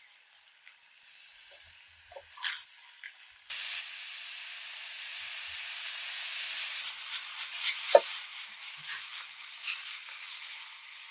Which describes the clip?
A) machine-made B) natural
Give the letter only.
B